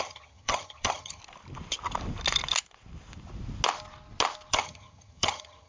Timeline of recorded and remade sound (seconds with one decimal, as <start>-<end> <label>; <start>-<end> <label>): 0.0-1.2 remade; 1.2-4.5 recorded; 4.5-5.7 remade